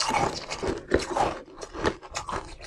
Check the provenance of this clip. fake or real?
real